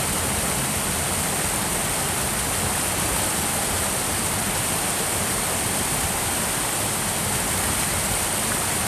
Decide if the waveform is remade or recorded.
recorded